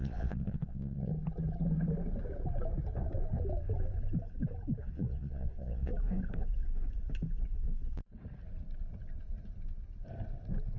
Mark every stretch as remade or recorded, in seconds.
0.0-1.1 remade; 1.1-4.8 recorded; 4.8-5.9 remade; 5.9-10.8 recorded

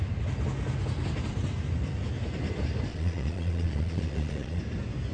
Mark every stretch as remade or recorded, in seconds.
0.0-2.9 recorded; 2.9-4.6 remade; 4.6-5.1 recorded

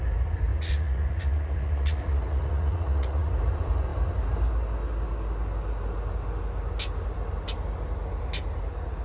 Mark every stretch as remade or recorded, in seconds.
0.0-0.5 recorded; 0.5-3.3 remade; 3.3-9.0 recorded

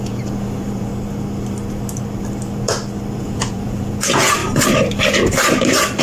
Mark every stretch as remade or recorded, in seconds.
0.0-0.9 remade; 0.9-3.2 recorded; 3.2-4.4 remade; 4.4-6.0 recorded

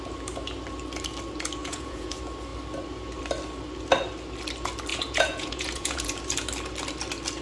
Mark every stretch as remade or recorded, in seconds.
0.0-1.6 recorded; 1.6-2.1 remade; 2.1-4.9 recorded; 4.9-6.1 remade; 6.1-7.4 recorded

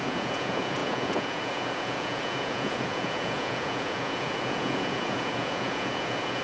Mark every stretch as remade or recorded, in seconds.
0.0-6.4 remade